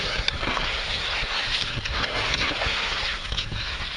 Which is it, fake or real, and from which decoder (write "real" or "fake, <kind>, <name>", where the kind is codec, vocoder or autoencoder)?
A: fake, codec, SNAC